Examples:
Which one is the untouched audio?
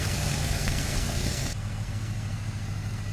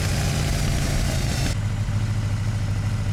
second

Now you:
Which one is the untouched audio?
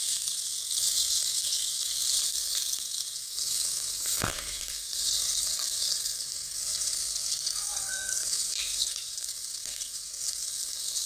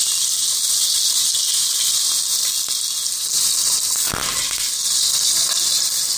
second